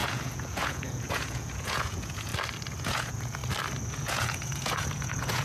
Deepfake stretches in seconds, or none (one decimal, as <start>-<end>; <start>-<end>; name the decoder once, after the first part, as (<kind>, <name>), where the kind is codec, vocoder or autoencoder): 0.0-2.3 (vocoder, Vocos); 2.8-3.4; 3.9-5.4